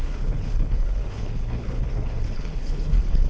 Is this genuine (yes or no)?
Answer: no